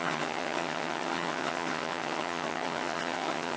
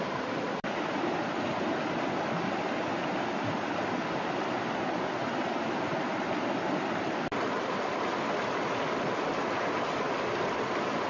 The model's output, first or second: first